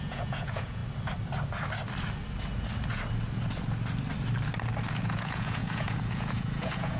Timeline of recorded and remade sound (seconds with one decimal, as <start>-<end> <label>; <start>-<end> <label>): 0.0-0.8 remade; 0.8-4.9 recorded; 4.9-7.0 remade